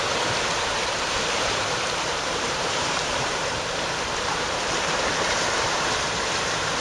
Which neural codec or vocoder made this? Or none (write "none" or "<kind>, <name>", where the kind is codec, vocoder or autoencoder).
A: vocoder, BigVGAN v2